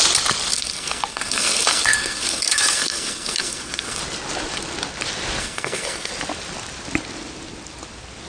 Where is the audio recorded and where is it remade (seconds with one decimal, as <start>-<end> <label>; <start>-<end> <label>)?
0.0-0.5 recorded; 0.5-4.0 remade; 4.0-5.4 recorded; 5.4-6.1 remade; 6.1-8.3 recorded